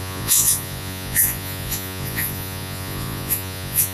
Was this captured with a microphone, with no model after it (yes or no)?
no